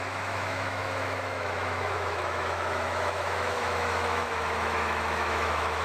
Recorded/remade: remade